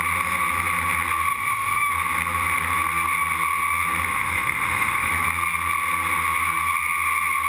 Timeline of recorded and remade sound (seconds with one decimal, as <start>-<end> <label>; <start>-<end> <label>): 0.0-1.3 recorded; 1.3-1.9 remade; 1.9-4.1 recorded; 4.1-5.1 remade; 5.1-7.5 recorded